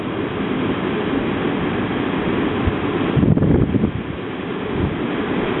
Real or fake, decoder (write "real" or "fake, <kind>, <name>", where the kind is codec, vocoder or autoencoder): fake, vocoder, BigVGAN v2